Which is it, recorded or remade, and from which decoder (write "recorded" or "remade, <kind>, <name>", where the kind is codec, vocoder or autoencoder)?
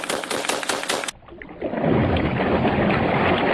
recorded